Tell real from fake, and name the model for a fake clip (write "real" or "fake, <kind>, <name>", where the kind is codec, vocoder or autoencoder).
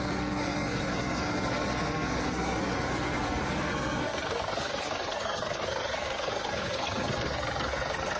fake, codec, SNAC